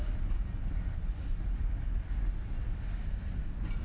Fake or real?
real